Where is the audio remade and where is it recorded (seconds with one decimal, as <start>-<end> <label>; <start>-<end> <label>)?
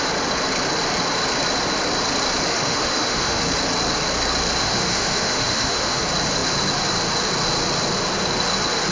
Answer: 0.0-2.5 recorded; 2.5-3.4 remade; 3.4-4.6 recorded; 4.6-6.0 remade; 6.0-8.9 recorded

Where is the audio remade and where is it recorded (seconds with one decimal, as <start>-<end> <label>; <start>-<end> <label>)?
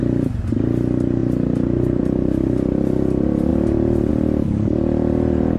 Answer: 0.0-5.6 recorded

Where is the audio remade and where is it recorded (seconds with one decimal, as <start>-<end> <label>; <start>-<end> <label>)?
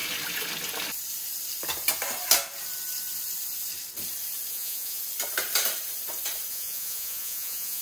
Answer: 0.0-4.5 recorded; 4.5-5.0 remade; 5.0-6.5 recorded; 6.5-7.8 remade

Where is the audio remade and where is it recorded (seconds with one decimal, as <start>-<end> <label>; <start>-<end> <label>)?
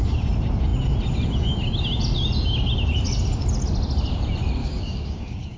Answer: 0.0-4.6 recorded; 4.6-5.6 remade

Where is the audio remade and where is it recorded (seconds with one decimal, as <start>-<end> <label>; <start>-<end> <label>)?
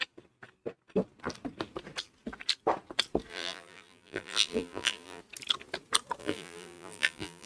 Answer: 0.0-3.3 recorded; 3.3-5.2 remade; 5.2-6.2 recorded; 6.2-7.5 remade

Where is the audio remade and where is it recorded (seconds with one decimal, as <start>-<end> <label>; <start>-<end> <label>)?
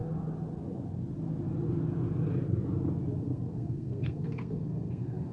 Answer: 0.0-3.2 recorded; 3.2-5.3 remade